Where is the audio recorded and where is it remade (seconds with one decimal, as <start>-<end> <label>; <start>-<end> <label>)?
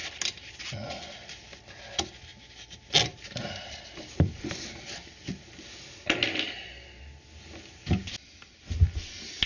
0.0-9.5 recorded